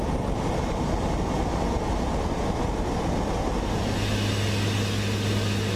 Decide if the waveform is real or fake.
real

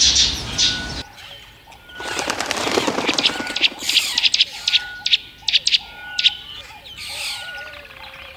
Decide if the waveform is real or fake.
real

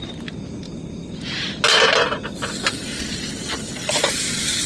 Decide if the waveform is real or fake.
real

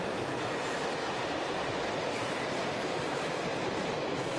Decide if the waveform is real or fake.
real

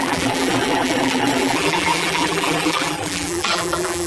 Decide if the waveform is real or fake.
fake